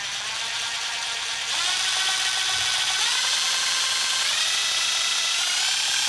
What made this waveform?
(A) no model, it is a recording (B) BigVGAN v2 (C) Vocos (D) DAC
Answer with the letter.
A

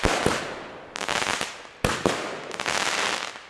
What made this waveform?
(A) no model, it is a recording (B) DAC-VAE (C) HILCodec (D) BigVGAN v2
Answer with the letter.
A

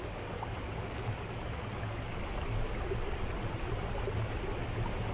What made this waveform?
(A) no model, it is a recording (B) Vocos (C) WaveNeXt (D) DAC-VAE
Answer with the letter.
A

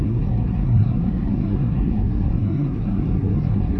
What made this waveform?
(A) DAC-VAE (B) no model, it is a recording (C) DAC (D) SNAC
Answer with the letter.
D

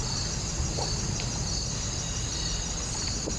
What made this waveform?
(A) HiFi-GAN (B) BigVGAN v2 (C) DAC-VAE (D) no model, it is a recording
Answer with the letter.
D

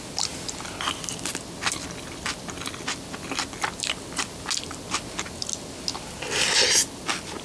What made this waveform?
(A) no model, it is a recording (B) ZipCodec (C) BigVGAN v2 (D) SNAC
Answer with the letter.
A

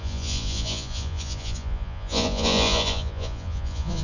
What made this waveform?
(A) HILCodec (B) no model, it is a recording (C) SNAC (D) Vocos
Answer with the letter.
D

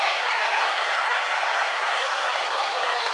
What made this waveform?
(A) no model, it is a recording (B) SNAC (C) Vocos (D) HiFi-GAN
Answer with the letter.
B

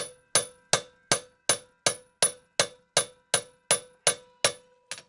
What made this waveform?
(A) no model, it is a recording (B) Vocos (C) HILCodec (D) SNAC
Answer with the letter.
A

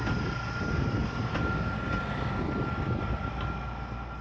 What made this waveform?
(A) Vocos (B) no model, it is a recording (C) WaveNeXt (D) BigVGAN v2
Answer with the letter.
B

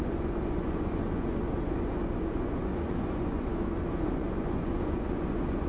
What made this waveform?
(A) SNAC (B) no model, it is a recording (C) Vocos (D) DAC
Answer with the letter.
C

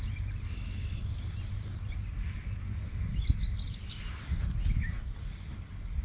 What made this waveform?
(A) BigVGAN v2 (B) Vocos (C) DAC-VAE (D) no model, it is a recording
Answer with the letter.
D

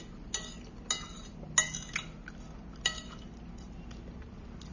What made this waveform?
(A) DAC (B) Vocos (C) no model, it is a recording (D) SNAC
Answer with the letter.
C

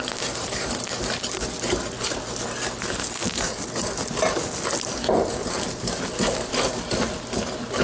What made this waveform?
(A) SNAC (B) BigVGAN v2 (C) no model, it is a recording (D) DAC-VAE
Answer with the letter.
C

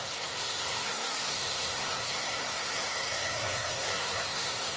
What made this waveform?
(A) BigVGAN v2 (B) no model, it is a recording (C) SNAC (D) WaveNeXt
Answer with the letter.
C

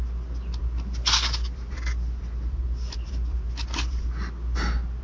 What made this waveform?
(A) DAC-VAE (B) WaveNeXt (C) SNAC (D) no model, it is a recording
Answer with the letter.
D